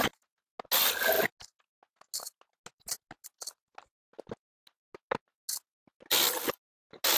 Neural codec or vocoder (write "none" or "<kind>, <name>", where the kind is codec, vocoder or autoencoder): none